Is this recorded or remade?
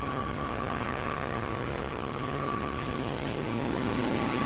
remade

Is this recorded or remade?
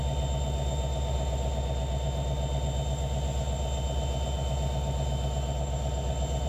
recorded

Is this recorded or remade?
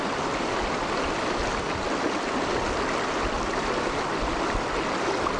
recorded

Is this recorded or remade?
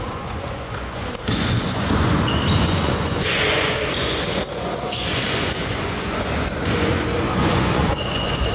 remade